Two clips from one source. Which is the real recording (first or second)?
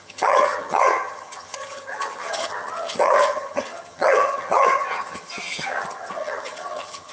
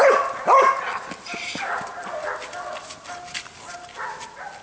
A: second